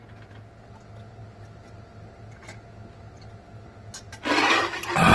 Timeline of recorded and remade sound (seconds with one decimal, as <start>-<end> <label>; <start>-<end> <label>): 0.0-5.1 recorded